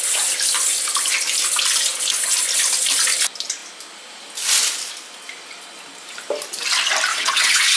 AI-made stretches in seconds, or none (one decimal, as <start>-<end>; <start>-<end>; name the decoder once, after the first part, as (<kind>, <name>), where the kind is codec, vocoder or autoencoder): 7.1-7.8 (vocoder, WaveNeXt)